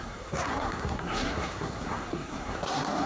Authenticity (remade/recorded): remade